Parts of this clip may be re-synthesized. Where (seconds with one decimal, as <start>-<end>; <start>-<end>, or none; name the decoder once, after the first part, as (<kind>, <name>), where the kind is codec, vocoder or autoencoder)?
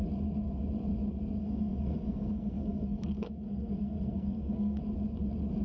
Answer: 1.4-4.8 (codec, SNAC)